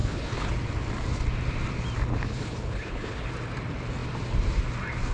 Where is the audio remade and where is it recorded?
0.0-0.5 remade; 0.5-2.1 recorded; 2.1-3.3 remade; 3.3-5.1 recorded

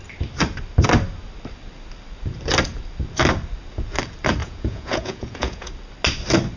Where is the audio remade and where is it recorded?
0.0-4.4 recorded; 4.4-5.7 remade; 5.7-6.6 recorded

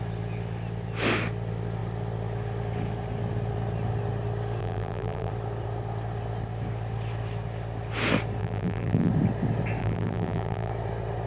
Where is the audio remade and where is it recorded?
0.0-4.6 recorded; 4.6-5.3 remade; 5.3-8.4 recorded; 8.4-9.1 remade; 9.1-9.8 recorded; 9.8-10.7 remade; 10.7-11.3 recorded

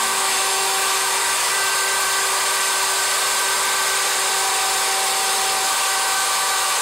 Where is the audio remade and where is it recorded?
0.0-1.5 remade; 1.5-5.6 recorded; 5.6-6.8 remade

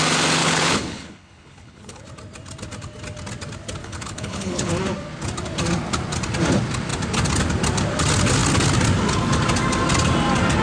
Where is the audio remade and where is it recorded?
0.0-0.4 recorded; 0.4-2.0 remade; 2.0-3.8 recorded; 3.8-4.7 remade; 4.7-10.6 recorded

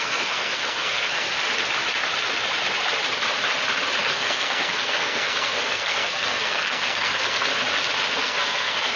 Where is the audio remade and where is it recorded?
0.0-1.3 remade; 1.3-4.0 recorded; 4.0-7.5 remade; 7.5-8.1 recorded; 8.1-9.0 remade